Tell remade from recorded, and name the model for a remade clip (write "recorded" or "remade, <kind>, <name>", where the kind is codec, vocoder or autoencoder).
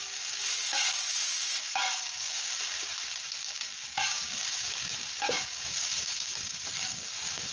remade, codec, DAC